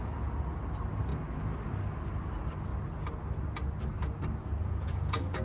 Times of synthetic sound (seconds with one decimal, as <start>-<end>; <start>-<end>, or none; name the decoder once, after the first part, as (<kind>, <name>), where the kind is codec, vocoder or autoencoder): 4.6-5.4 (vocoder, Vocos)